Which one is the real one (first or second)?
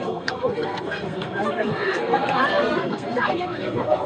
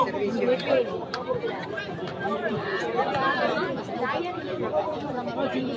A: second